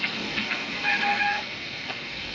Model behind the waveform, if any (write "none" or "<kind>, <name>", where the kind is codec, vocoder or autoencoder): codec, SNAC